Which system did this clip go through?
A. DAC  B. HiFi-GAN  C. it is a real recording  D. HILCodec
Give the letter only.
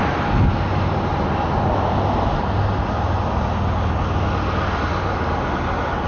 C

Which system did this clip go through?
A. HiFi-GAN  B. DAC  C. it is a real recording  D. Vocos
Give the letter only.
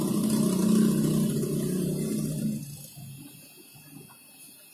C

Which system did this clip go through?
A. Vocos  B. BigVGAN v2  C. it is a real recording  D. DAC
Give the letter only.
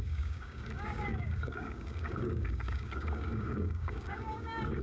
D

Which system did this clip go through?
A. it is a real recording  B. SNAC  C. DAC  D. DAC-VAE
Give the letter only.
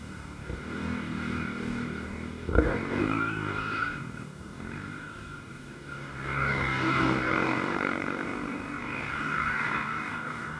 C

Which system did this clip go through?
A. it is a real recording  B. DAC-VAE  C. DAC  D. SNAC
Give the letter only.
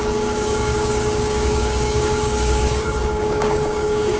C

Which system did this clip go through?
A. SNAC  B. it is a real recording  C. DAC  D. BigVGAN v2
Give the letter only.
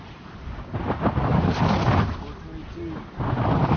B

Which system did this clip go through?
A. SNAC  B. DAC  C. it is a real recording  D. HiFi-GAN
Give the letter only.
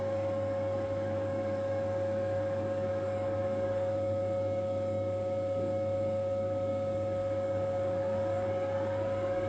B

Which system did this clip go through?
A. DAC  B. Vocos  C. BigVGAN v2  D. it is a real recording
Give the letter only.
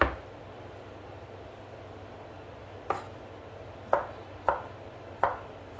D